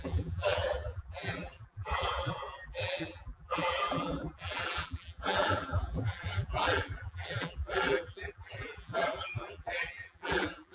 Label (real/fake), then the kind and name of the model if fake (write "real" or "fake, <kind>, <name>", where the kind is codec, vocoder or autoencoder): fake, vocoder, BigVGAN v2